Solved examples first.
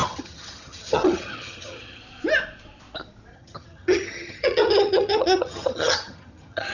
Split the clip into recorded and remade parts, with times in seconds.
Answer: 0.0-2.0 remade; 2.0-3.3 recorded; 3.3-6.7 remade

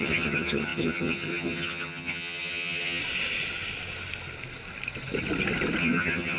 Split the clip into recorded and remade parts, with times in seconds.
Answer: 0.0-3.0 remade; 3.0-5.8 recorded; 5.8-6.4 remade

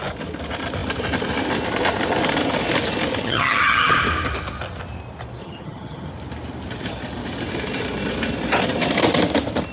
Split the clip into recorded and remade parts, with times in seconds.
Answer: 0.0-3.2 recorded; 3.2-3.9 remade; 3.9-5.4 recorded; 5.4-6.1 remade; 6.1-9.7 recorded

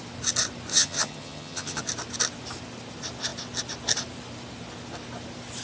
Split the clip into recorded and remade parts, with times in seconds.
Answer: 0.0-0.7 recorded; 0.7-1.8 remade; 1.8-5.6 recorded

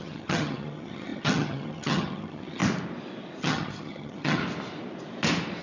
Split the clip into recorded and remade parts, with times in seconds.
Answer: 0.0-2.6 remade; 2.6-3.4 recorded; 3.4-4.4 remade; 4.4-5.6 recorded

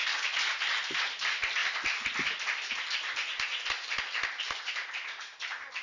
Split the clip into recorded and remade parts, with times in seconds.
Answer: 0.0-5.8 recorded

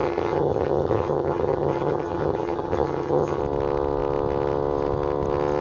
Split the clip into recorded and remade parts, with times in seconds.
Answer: 0.0-3.4 remade; 3.4-5.6 recorded